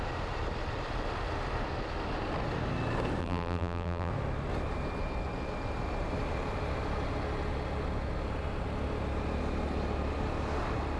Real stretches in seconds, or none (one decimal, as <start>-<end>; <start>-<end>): 0.0-3.2; 4.1-11.0